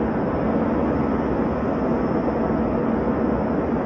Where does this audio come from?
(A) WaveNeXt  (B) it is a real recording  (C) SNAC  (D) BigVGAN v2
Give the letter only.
B